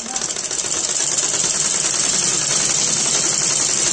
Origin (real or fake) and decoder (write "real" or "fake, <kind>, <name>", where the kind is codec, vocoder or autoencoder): real